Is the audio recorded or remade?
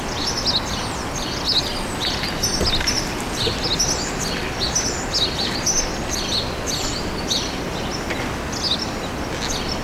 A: recorded